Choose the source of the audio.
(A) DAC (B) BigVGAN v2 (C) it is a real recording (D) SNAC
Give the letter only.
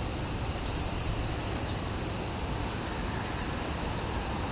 C